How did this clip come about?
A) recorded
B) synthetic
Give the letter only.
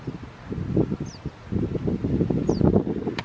A